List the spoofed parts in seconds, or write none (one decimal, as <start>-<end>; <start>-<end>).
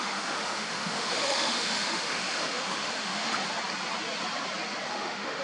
0.0-3.4; 4.9-5.4